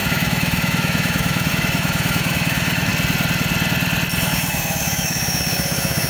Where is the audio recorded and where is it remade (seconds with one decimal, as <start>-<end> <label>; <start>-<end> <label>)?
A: 0.0-2.9 remade; 2.9-4.2 recorded; 4.2-6.1 remade